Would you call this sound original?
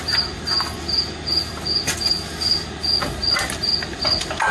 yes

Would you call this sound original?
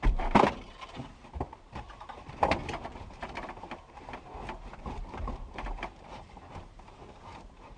no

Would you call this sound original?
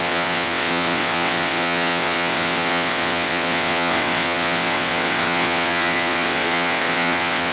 no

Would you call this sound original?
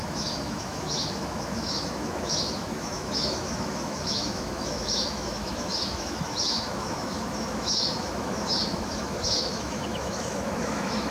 no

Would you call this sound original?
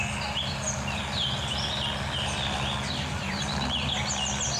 yes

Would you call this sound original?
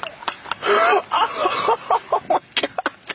yes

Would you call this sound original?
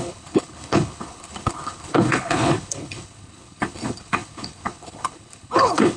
no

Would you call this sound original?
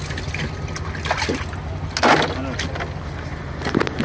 yes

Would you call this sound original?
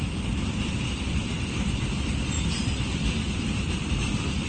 no